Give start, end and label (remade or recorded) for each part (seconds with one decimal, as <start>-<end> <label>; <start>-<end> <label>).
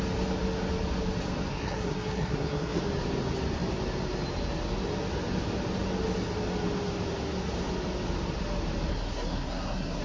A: 0.0-1.5 recorded; 1.5-2.8 remade; 2.8-8.9 recorded; 8.9-10.0 remade